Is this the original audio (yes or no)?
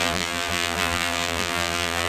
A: no